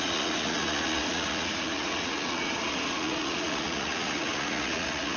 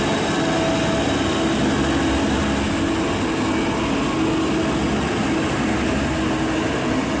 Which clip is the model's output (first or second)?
first